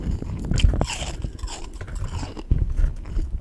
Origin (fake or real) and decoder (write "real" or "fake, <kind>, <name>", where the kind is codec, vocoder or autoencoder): real